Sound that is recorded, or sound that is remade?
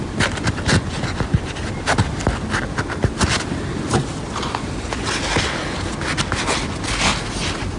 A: recorded